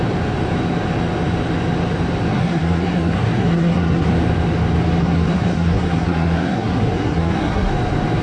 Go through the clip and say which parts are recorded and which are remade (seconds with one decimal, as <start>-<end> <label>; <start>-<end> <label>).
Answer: 0.0-2.3 recorded; 2.3-4.1 remade; 4.1-5.0 recorded; 5.0-7.7 remade; 7.7-8.2 recorded